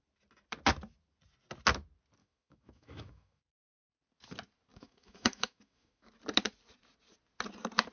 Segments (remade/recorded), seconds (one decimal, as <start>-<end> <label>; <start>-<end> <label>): 0.0-2.2 recorded; 2.2-3.4 remade; 3.4-4.7 recorded; 4.7-6.1 remade; 6.1-7.9 recorded